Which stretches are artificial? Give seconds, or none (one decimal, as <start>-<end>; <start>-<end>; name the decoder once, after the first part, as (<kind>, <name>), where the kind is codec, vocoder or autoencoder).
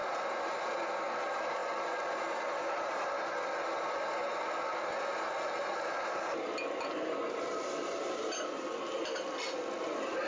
none